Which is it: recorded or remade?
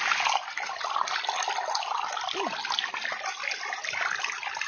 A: recorded